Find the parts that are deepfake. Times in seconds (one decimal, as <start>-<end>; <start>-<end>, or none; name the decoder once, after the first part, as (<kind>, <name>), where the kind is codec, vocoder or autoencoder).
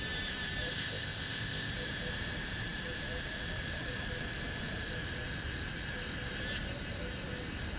0.7-1.7 (codec, ZipCodec)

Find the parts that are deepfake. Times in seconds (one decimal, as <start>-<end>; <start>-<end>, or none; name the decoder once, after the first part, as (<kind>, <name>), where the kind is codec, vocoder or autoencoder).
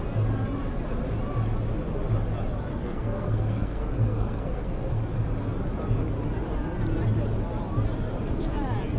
2.7-5.0 (codec, SNAC)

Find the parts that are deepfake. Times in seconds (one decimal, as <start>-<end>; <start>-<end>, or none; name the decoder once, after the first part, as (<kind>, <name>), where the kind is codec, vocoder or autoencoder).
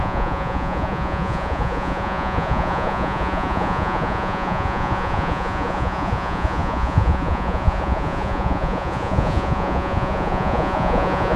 0.0-11.4 (vocoder, Vocos)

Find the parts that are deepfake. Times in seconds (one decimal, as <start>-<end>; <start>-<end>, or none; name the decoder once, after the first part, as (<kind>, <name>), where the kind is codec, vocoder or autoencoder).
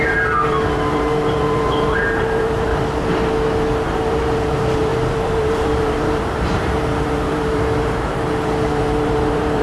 0.0-2.7 (vocoder, BigVGAN v2); 4.0-9.6